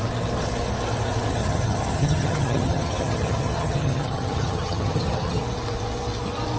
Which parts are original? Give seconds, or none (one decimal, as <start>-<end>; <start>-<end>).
0.0-1.4; 5.4-6.6